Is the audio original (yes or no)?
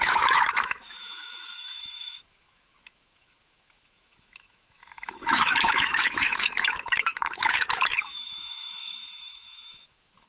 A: no